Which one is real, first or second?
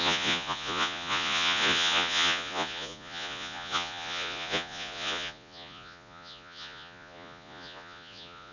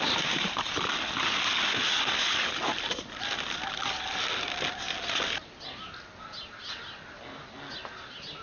second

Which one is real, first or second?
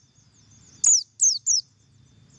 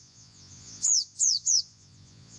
first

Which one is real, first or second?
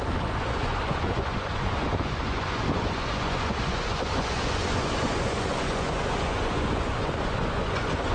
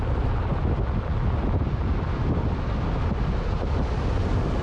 second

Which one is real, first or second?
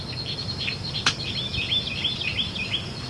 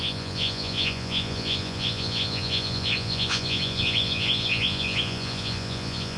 first